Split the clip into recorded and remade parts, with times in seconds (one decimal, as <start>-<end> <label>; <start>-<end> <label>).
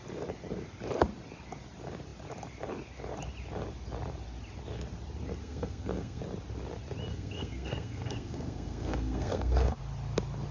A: 0.0-5.4 recorded; 5.4-6.2 remade; 6.2-7.1 recorded; 7.1-9.8 remade; 9.8-10.5 recorded